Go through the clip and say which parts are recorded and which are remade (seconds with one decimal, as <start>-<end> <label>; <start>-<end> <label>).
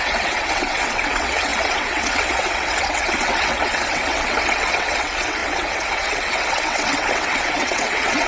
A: 0.0-8.3 remade